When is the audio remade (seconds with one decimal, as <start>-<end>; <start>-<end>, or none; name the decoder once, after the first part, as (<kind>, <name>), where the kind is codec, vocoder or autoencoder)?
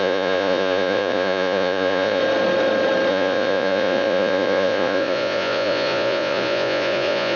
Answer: 0.0-2.2 (vocoder, Vocos); 3.1-7.4